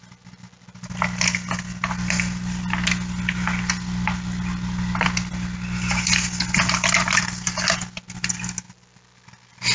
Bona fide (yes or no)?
yes